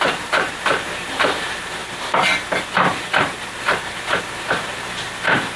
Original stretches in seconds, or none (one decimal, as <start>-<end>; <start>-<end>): 1.8-3.5